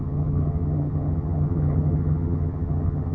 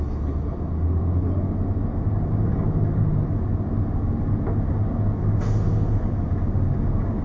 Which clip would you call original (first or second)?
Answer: second